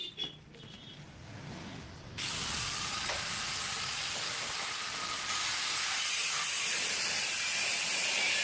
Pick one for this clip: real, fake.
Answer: real